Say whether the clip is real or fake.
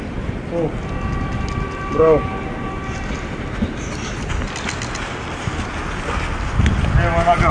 real